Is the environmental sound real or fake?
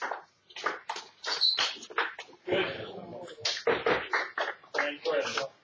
real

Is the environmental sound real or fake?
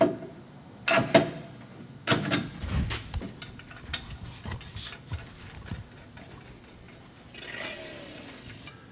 real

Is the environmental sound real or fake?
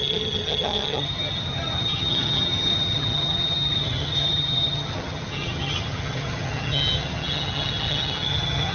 fake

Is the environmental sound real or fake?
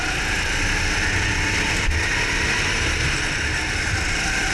real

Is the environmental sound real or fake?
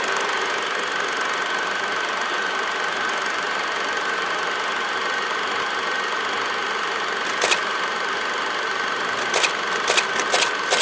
real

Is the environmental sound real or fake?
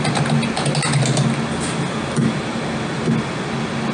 real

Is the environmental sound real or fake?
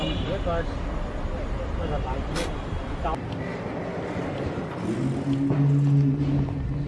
real